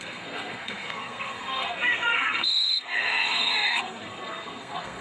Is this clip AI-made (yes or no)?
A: yes